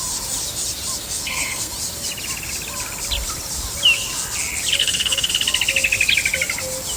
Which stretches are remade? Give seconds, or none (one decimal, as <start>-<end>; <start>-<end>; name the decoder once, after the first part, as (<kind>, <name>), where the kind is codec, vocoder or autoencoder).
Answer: 1.0-1.7 (codec, SNAC); 4.8-5.3